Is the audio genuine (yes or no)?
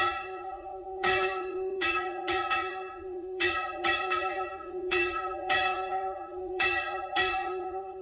no